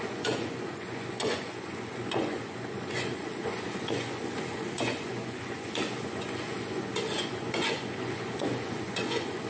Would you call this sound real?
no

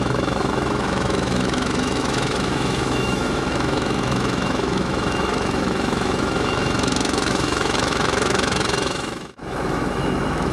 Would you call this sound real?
no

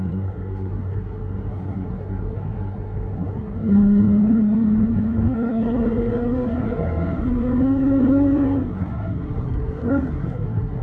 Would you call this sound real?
no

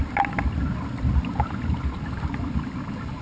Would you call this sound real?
yes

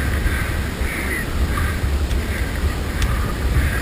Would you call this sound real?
yes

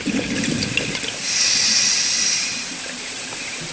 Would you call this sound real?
yes